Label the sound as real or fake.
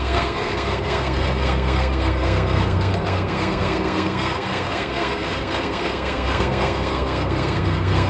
fake